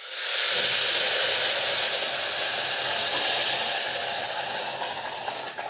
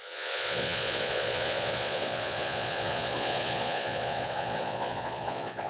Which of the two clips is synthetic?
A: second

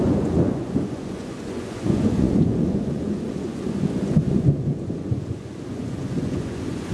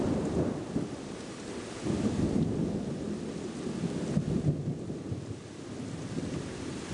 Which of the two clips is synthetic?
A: first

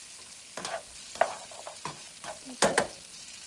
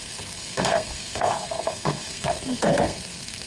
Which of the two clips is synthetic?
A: second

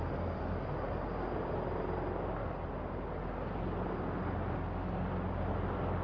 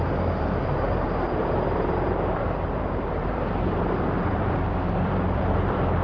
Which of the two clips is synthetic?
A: second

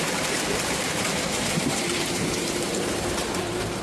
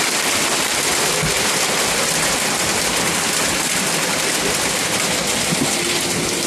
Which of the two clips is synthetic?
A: first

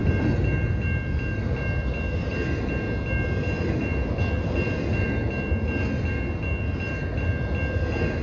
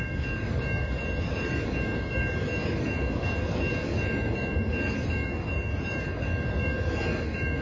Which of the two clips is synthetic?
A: second